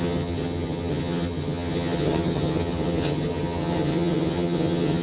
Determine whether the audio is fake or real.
fake